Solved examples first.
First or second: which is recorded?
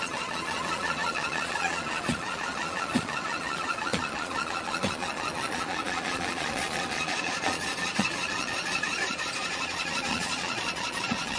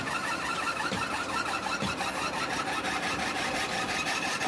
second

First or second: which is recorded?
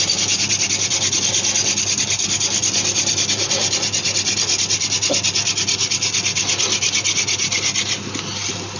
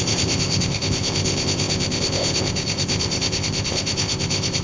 first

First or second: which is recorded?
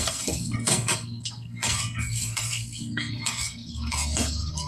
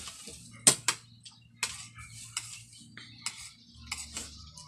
second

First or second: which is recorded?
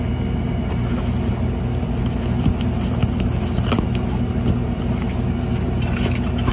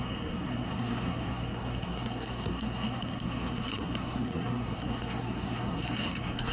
first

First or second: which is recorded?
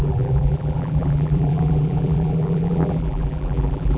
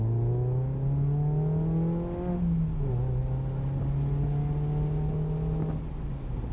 second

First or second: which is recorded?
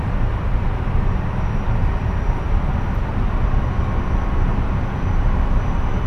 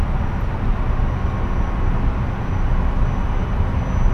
second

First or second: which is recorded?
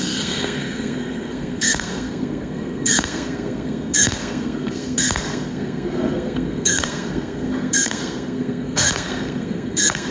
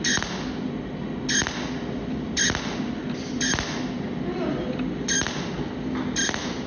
second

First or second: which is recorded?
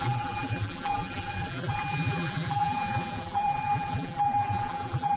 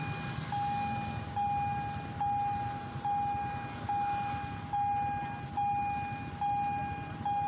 second